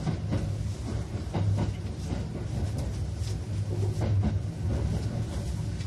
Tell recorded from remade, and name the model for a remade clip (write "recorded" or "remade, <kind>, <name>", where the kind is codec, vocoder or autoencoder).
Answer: recorded